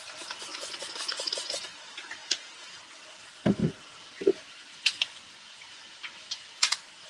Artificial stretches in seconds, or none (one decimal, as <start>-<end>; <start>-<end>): 0.5-1.6; 4.7-6.5